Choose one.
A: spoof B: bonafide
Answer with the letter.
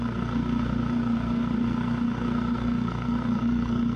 A